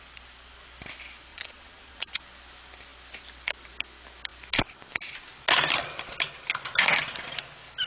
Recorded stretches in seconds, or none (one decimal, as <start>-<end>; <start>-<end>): 0.0-1.3; 2.2-7.9